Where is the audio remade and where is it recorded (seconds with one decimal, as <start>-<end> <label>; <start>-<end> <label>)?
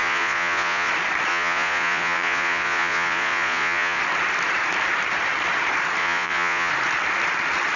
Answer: 0.0-0.9 remade; 0.9-1.3 recorded; 1.3-4.0 remade; 4.0-6.0 recorded; 6.0-6.7 remade; 6.7-7.8 recorded